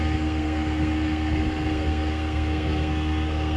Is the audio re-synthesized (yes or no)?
yes